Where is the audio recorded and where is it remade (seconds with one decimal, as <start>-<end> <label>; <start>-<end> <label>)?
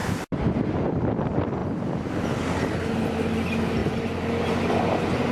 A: 0.0-5.3 recorded